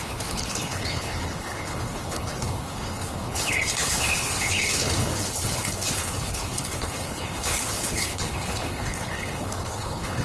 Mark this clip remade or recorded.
remade